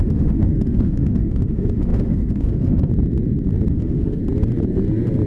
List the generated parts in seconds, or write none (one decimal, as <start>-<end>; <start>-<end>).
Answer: 0.0-2.9; 3.7-4.2

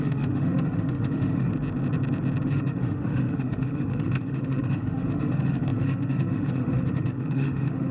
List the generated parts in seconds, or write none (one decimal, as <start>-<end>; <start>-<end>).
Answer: 0.0-1.5; 2.5-7.9

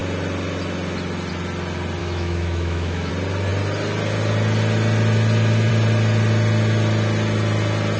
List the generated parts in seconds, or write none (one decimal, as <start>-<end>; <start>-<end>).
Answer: 2.0-3.1

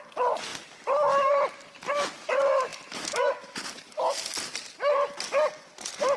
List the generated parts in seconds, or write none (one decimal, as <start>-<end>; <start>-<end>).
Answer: none

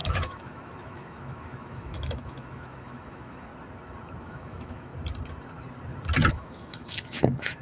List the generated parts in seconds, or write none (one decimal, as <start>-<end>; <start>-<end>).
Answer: 0.0-3.5; 4.2-4.9; 6.3-7.6

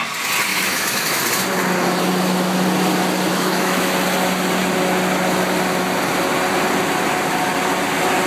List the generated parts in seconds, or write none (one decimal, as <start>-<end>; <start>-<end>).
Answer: 0.5-1.2; 3.3-3.9

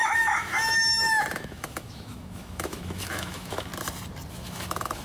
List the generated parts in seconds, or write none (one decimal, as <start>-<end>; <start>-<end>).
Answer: 0.0-3.7; 4.3-5.0